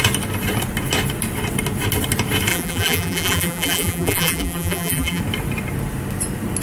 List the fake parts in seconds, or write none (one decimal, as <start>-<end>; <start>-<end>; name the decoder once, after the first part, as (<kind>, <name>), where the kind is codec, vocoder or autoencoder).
2.5-5.2 (vocoder, BigVGAN v2)